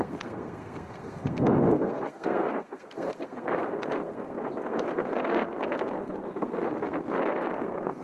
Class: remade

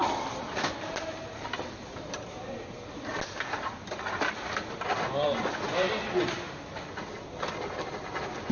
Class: recorded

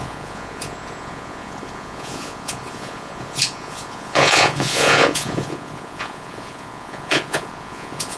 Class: remade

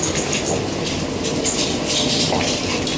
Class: recorded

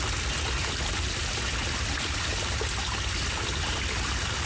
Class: recorded